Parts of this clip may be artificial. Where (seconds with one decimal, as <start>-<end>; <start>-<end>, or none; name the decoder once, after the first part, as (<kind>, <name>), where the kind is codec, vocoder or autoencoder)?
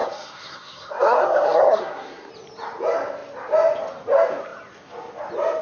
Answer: 0.0-2.3 (codec, SNAC)